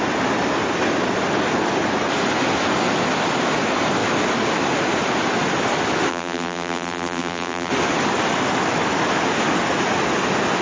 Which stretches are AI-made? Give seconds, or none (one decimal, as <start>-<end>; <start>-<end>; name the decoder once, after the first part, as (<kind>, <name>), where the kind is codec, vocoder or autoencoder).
6.1-7.7 (vocoder, BigVGAN v2)